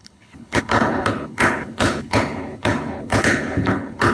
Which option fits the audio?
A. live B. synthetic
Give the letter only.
B